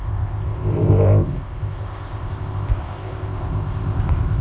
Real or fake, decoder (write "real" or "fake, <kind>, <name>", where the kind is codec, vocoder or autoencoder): fake, codec, ZipCodec